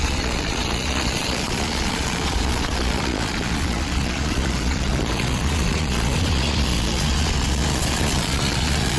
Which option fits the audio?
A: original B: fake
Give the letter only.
B